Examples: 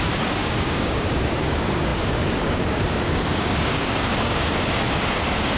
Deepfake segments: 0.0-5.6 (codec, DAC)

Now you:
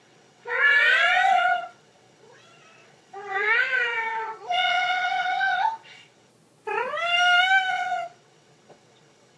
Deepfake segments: 0.0-6.3 (vocoder, WaveNeXt); 7.7-9.4

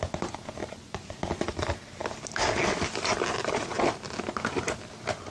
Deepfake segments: 0.6-1.2 (vocoder, Vocos)

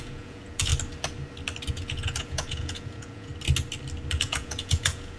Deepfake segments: 0.0-0.7 (vocoder, Vocos); 1.7-3.3; 4.1-5.2

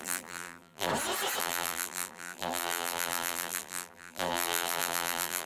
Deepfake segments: 0.0-0.9 (vocoder, BigVGAN v2); 1.4-5.5